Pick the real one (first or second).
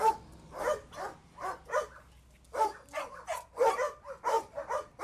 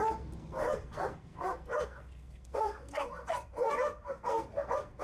first